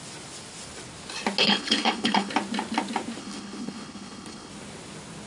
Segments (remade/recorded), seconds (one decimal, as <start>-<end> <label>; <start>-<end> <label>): 0.0-1.4 recorded; 1.4-2.3 remade; 2.3-3.2 recorded; 3.2-4.5 remade; 4.5-5.3 recorded